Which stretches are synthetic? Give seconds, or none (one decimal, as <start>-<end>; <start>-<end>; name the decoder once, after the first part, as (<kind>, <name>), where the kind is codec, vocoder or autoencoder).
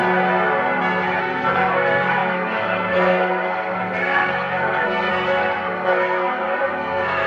1.2-7.3 (codec, SNAC)